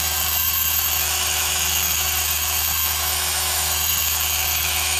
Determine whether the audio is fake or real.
fake